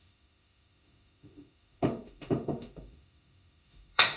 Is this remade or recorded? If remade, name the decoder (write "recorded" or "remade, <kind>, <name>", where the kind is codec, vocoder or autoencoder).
remade, autoencoder, DAC-VAE